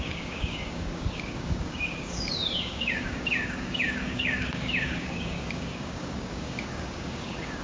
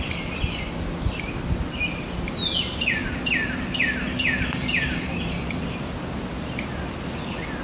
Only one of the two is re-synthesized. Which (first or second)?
first